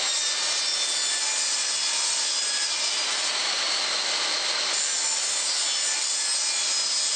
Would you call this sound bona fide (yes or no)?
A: yes